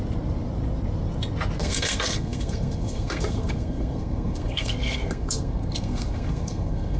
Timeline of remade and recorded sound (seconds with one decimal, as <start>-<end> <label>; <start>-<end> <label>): 0.0-1.6 recorded; 1.6-7.0 remade